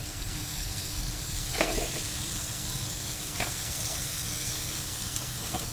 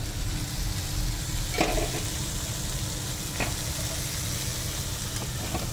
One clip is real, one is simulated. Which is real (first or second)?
second